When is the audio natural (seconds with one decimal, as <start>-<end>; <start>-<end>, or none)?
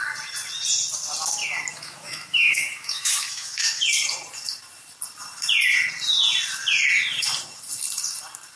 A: 0.0-1.7; 3.8-8.6